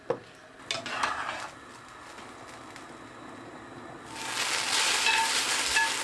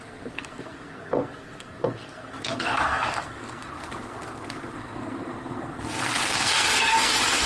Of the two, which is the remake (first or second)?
second